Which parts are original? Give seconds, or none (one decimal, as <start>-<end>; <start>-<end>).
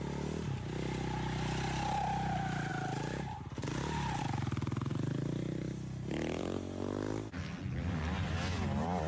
0.0-9.1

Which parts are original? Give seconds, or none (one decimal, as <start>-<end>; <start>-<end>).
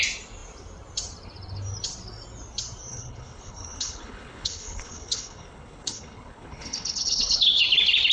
0.0-2.9; 7.6-8.1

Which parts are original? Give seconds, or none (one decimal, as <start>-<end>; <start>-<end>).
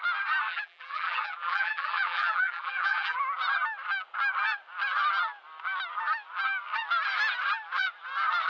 0.0-0.5; 3.2-8.5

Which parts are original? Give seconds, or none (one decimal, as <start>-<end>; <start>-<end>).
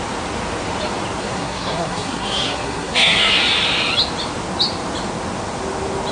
0.0-1.2; 3.4-6.1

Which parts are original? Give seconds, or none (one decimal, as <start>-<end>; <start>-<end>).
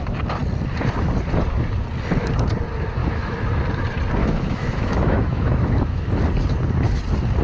0.0-3.0; 3.5-4.2; 6.1-7.4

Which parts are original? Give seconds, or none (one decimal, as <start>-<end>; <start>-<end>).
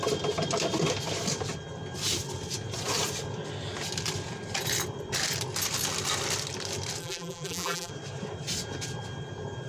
0.0-7.0; 7.9-9.7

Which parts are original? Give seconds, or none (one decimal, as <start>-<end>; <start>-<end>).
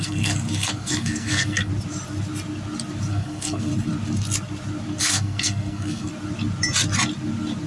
1.7-3.1; 3.7-5.0; 6.1-7.7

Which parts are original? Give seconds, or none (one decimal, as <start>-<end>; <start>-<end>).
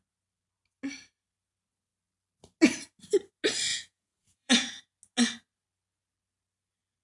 0.0-3.7; 4.8-7.0